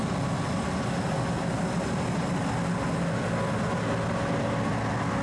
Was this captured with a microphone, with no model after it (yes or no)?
yes